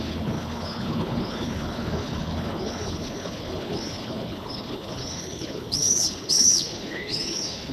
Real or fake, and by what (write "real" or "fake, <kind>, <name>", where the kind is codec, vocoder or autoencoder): fake, codec, HILCodec